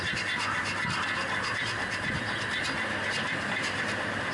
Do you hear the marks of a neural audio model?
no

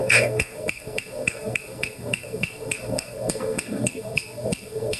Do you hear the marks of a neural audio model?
yes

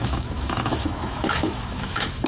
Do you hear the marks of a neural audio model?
yes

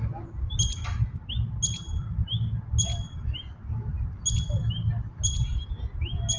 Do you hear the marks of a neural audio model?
no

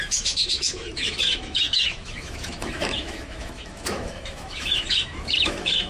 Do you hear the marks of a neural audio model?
yes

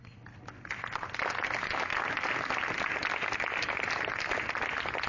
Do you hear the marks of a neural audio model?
no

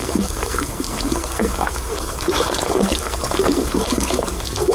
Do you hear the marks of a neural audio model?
yes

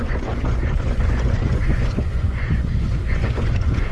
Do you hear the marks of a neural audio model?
yes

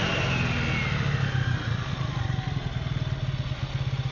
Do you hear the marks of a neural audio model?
no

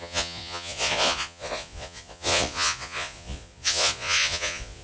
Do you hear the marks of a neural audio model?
yes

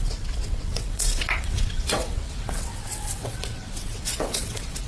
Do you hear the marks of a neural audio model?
yes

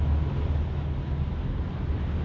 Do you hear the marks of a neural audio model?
no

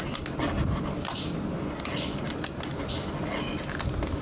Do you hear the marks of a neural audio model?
no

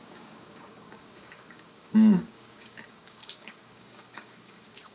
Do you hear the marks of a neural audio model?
yes